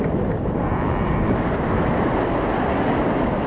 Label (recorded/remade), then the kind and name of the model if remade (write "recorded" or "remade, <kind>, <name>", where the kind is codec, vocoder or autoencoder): recorded